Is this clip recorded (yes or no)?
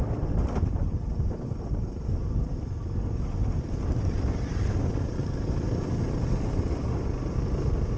yes